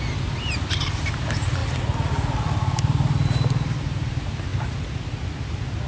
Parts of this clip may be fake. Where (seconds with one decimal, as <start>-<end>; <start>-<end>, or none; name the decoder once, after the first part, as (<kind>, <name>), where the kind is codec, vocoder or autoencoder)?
none